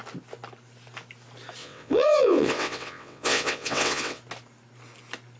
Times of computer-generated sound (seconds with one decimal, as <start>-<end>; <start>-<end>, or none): 1.6-4.2